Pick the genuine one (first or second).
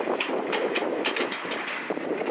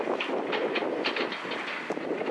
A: second